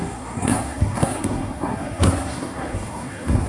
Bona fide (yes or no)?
no